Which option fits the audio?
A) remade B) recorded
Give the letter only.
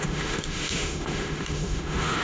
A